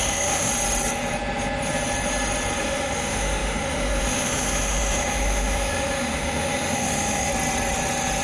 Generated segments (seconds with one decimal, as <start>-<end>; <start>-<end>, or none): 0.0-0.5; 2.6-7.3